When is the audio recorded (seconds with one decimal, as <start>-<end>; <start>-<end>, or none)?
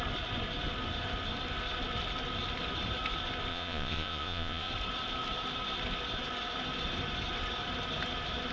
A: 0.0-3.5; 4.7-8.5